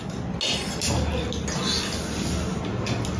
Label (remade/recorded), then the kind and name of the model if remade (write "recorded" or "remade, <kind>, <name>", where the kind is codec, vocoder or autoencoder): recorded